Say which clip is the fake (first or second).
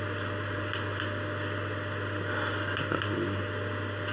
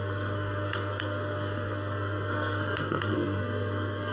second